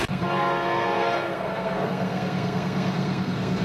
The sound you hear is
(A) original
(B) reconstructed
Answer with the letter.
B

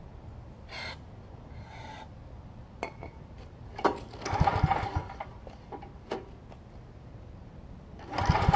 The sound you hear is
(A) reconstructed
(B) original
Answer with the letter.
B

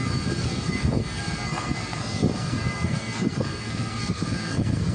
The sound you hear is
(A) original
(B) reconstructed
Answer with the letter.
B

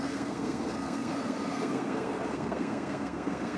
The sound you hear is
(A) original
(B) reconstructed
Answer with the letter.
B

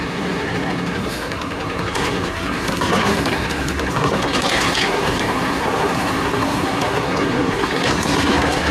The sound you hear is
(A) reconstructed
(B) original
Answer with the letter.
A